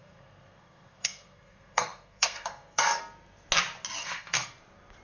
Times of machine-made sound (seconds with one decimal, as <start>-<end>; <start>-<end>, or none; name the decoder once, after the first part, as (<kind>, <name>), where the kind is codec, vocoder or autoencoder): 0.0-3.0 (codec, SNAC); 4.0-4.5